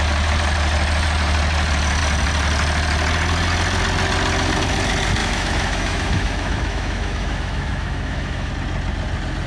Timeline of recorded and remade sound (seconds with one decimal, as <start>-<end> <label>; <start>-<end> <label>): 0.0-5.2 recorded; 5.2-8.5 remade; 8.5-9.5 recorded

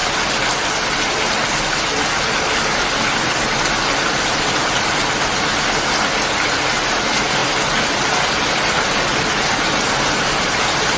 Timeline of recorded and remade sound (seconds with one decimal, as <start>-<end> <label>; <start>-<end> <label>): 0.0-11.0 recorded

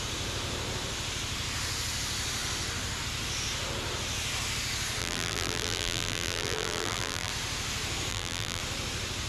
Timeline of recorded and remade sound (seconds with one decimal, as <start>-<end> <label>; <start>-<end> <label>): 0.0-5.0 recorded; 5.0-7.3 remade; 7.3-8.1 recorded; 8.1-8.6 remade; 8.6-9.3 recorded

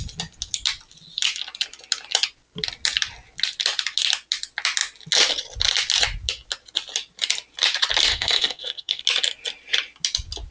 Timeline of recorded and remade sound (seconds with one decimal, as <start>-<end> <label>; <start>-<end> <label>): 0.0-8.1 recorded; 8.1-9.0 remade; 9.0-10.5 recorded